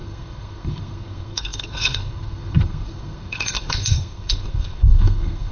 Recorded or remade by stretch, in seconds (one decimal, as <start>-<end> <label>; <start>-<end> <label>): 0.0-5.5 remade